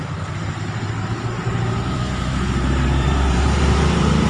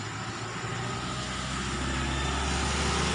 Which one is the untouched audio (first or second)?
second